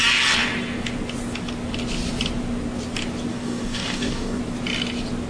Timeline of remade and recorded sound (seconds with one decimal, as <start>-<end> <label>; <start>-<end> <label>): 0.0-3.3 recorded; 3.3-4.4 remade; 4.4-5.3 recorded